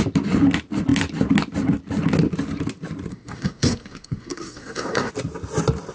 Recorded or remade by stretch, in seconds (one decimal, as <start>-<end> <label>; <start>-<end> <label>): 0.0-3.1 recorded; 3.1-5.1 remade; 5.1-5.9 recorded